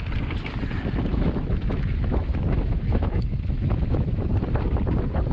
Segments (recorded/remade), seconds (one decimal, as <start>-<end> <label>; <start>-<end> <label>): 0.0-1.1 recorded; 1.1-4.3 remade; 4.3-5.3 recorded

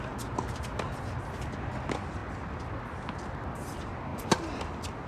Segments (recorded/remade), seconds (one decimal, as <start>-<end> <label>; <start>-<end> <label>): 0.0-5.1 recorded

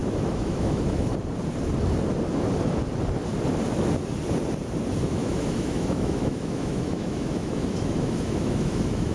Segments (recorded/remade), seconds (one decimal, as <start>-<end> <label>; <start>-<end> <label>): 0.0-1.1 remade; 1.1-5.0 recorded; 5.0-9.1 remade

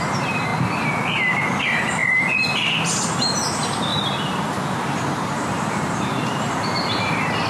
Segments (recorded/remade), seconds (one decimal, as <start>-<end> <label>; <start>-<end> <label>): 0.0-0.5 remade; 0.5-1.6 recorded; 1.6-2.0 remade; 2.0-3.1 recorded; 3.1-3.9 remade; 3.9-4.7 recorded; 4.7-7.5 remade